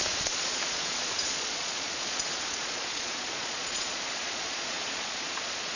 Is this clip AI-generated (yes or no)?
yes